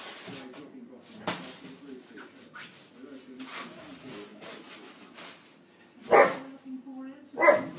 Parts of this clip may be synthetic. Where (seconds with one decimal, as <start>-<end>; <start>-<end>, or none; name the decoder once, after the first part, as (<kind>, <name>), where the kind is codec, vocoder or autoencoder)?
none